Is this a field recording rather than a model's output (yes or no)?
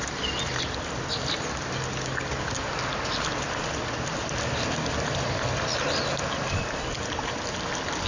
yes